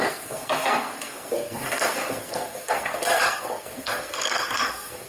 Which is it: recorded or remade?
remade